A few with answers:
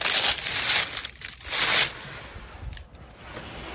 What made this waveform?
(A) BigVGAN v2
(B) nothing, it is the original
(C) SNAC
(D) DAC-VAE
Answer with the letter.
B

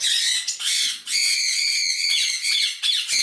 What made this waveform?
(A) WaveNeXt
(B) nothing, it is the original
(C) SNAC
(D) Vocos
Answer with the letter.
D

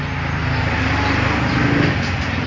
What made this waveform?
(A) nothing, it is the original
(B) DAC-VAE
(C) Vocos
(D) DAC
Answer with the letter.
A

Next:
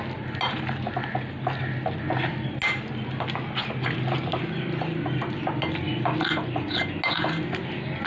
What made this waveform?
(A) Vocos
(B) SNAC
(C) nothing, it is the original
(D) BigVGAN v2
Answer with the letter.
C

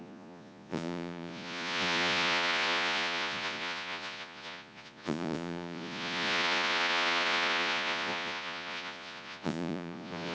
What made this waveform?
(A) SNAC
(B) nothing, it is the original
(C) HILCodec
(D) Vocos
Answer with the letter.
D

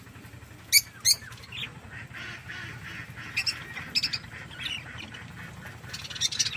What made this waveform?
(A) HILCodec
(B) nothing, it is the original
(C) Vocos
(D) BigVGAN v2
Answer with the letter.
B